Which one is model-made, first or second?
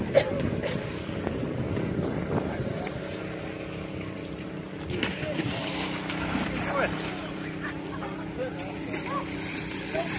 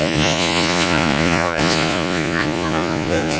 second